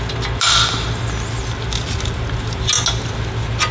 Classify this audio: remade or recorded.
recorded